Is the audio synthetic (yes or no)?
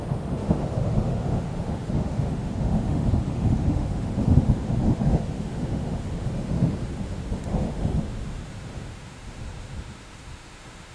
yes